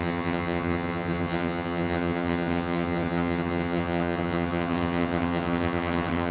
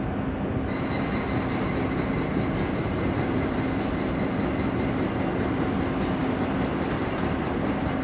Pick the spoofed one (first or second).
first